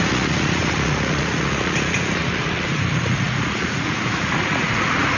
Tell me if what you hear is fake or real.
fake